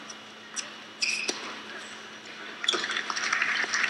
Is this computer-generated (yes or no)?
no